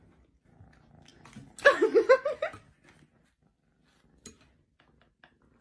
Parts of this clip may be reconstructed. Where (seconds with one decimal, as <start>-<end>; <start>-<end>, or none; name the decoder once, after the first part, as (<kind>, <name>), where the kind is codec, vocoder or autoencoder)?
none